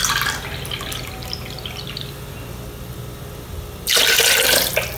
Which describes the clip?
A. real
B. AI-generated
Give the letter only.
A